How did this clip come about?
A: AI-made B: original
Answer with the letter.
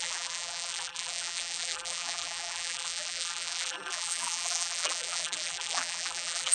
A